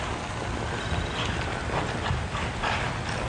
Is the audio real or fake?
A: real